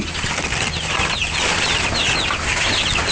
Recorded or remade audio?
recorded